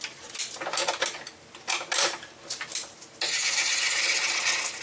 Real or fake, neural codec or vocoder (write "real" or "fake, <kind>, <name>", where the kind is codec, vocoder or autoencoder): real